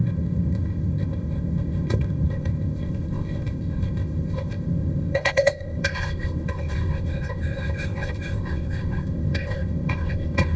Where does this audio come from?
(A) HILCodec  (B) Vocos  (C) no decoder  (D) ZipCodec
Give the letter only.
D